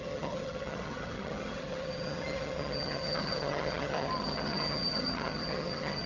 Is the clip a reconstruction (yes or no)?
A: yes